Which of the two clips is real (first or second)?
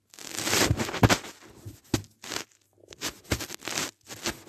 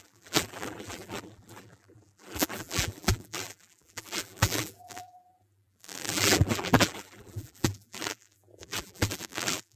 first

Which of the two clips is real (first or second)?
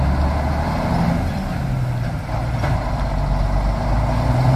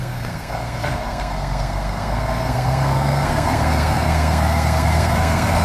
first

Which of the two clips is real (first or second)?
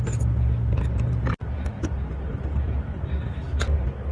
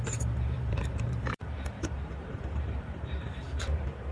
first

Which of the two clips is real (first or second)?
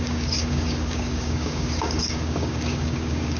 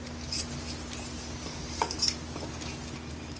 second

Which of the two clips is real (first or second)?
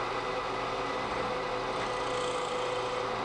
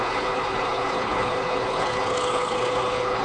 first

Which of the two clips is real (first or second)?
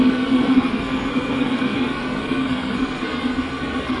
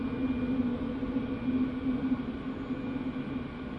second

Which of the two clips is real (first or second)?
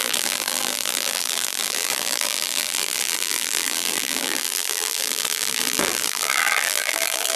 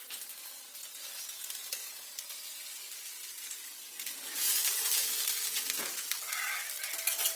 second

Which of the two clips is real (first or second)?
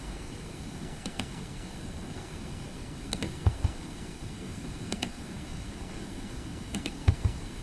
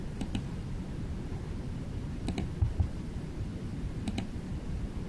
second